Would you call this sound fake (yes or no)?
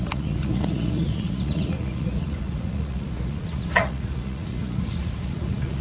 yes